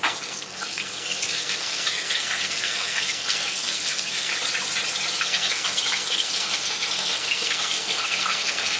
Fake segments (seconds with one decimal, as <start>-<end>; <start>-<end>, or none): 0.0-4.3; 5.2-8.8